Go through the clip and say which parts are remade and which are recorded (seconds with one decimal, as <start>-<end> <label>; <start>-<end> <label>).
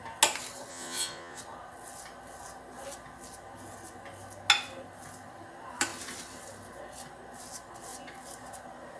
0.0-0.7 recorded; 0.7-1.4 remade; 1.4-9.0 recorded